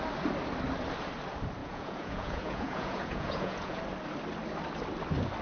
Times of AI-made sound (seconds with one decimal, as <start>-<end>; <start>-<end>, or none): 1.6-3.8